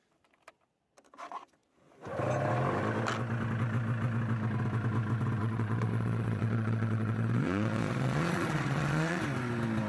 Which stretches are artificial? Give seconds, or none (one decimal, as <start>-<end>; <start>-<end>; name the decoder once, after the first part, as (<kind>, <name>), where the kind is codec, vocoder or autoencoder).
5.4-9.2 (vocoder, Vocos)